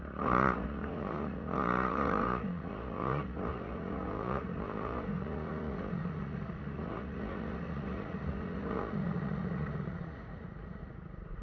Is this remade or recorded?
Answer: remade